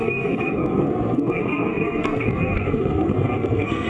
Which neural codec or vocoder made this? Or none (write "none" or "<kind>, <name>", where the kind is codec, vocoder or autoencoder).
codec, SNAC